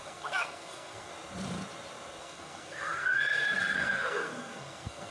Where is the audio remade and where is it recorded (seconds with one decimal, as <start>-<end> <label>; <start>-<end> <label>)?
0.0-1.1 remade; 1.1-2.2 recorded; 2.2-5.1 remade